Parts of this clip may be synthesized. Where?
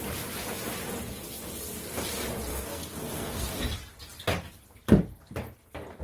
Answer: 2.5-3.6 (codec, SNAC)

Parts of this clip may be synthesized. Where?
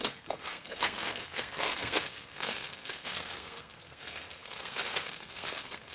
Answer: 0.0-5.9 (codec, SNAC)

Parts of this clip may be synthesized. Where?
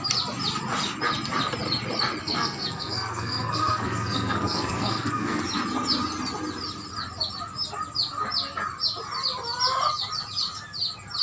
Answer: 2.2-5.4 (codec, SNAC)